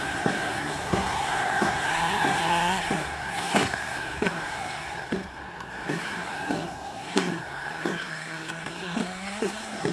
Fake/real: fake